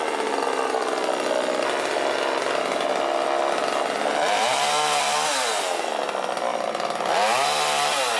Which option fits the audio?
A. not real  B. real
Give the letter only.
B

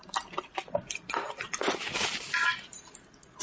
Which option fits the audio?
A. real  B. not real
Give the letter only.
A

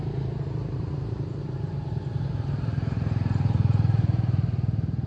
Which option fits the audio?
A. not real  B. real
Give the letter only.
A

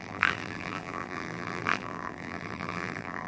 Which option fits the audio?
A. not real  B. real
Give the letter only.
A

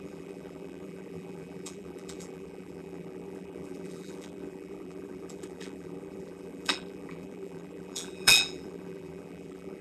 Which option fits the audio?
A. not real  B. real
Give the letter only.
A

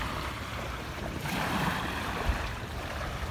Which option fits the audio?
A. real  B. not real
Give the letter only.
B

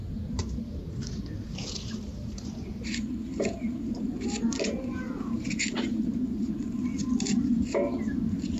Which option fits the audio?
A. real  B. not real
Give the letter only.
B